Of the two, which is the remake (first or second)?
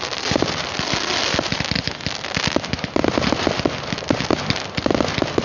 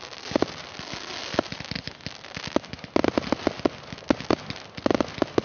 first